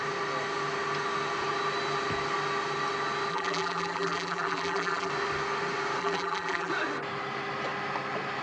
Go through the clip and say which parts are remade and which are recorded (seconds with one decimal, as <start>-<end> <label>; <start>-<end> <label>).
0.0-3.3 recorded; 3.3-5.1 remade; 5.1-6.0 recorded; 6.0-6.7 remade; 6.7-8.4 recorded